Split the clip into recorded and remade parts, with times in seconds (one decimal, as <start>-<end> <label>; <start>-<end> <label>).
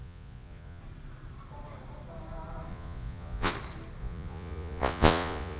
0.0-0.8 remade; 0.8-2.7 recorded; 2.7-3.5 remade; 3.5-4.0 recorded; 4.0-5.6 remade